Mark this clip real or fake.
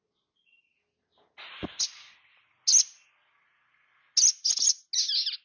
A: real